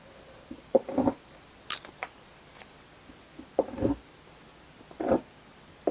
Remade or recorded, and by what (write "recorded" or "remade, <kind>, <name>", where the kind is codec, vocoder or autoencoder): recorded